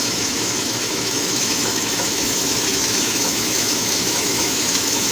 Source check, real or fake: fake